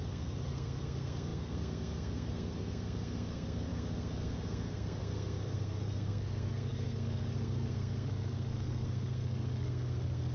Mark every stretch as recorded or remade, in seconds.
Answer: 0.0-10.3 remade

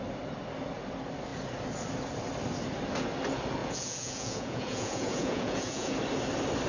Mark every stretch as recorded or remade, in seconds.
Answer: 0.0-3.6 recorded; 3.6-5.9 remade; 5.9-6.7 recorded

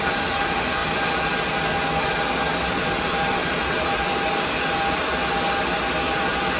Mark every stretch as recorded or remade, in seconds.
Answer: 0.0-6.6 recorded

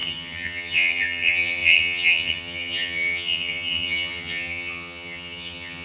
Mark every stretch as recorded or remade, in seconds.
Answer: 0.0-5.8 remade

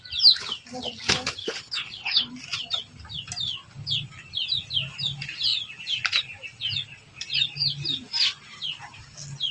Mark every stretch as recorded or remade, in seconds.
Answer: 0.0-1.4 recorded; 1.4-2.3 remade; 2.3-9.5 recorded

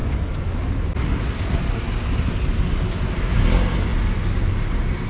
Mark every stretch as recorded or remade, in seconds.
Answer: 0.0-5.1 recorded

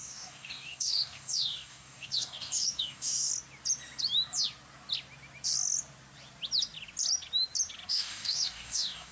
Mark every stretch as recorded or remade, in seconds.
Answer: 0.0-3.3 remade; 3.3-7.9 recorded; 7.9-9.1 remade